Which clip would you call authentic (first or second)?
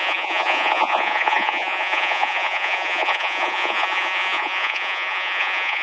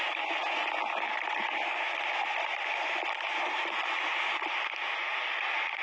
second